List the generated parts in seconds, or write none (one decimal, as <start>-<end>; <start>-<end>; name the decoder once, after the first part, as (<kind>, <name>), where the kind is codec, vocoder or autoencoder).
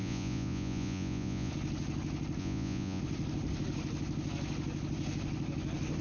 0.0-1.5 (vocoder, Vocos); 2.4-3.0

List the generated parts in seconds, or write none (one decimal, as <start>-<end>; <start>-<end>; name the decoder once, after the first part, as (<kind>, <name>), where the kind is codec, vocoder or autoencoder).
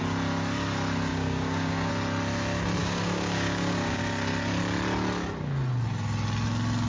1.1-1.9 (codec, DAC); 2.8-4.0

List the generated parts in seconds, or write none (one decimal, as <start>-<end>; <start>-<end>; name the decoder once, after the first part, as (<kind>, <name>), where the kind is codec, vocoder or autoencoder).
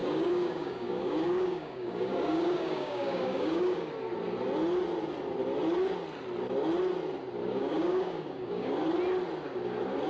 0.0-3.9 (codec, DAC); 7.4-8.7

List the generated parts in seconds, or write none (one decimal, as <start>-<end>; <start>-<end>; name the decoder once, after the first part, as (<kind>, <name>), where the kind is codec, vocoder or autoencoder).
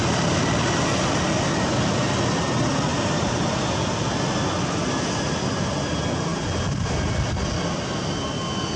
2.9-3.7 (vocoder, BigVGAN v2)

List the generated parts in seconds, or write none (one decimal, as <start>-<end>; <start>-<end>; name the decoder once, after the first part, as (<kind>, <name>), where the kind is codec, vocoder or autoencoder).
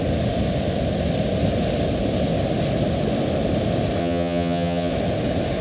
4.0-4.9 (vocoder, HiFi-GAN)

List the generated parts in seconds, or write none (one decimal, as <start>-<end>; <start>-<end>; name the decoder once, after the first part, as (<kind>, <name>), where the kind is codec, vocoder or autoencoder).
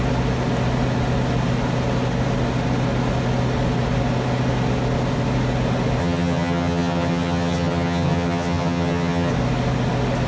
6.0-9.3 (vocoder, HiFi-GAN)